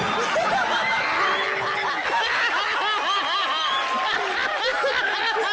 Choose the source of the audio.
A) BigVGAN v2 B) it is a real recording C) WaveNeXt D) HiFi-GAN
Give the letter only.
B